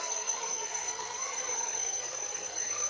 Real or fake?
fake